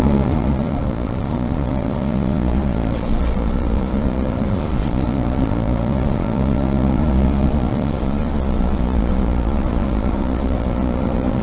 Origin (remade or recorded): remade